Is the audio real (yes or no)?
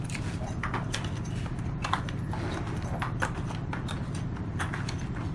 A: yes